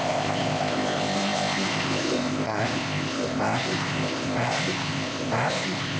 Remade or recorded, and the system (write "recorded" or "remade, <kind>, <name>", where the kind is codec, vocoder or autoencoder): remade, codec, ZipCodec